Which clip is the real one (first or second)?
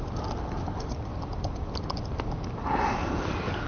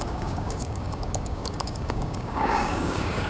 first